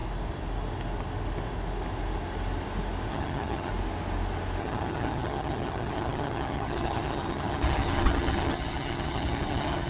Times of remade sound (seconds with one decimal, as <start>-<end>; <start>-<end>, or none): 3.1-3.7; 4.6-9.9